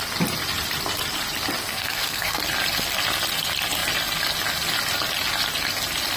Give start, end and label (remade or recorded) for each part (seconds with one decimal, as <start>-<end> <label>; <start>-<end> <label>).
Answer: 0.0-1.7 recorded; 1.7-2.4 remade; 2.4-6.2 recorded